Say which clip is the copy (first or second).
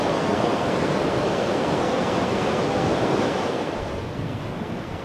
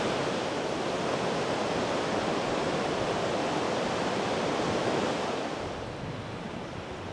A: first